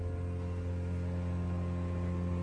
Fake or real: real